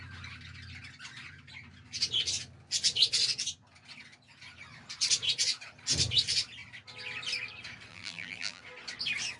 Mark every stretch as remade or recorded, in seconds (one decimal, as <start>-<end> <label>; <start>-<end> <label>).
0.0-7.9 recorded; 7.9-8.6 remade; 8.6-9.4 recorded